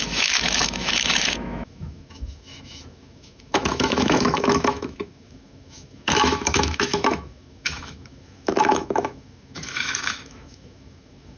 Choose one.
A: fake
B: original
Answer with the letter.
A